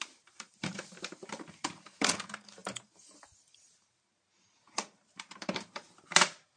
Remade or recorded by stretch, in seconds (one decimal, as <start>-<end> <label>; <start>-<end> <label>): 0.0-6.6 remade